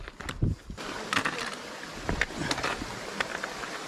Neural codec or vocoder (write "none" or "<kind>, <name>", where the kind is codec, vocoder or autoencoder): none